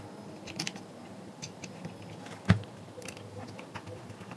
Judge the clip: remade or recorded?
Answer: recorded